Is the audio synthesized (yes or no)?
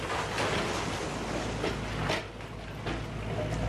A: no